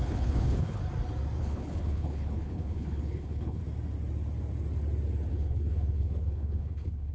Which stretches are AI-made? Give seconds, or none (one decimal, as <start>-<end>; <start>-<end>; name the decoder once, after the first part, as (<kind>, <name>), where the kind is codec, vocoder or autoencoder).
0.0-0.8 (codec, HILCodec); 1.4-3.6; 5.3-7.1